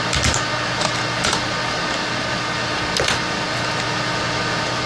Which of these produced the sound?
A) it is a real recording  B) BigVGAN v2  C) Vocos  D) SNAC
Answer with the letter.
A